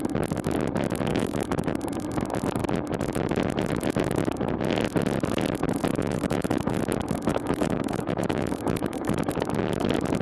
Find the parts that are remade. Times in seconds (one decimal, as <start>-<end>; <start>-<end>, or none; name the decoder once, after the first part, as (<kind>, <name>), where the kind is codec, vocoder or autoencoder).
1.1-1.8 (autoencoder, DAC-VAE); 5.9-6.8; 7.3-9.3